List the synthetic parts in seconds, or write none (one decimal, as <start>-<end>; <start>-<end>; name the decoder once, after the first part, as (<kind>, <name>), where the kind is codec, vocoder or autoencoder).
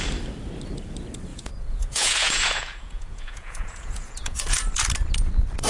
1.3-4.7 (vocoder, Vocos)